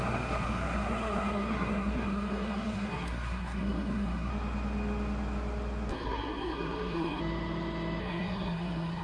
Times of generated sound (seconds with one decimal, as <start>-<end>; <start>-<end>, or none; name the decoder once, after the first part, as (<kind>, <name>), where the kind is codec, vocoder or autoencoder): 0.0-4.3 (codec, SNAC); 5.9-7.2; 8.0-9.0